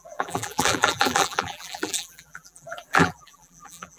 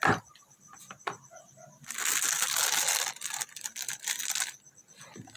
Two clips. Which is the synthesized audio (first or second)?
first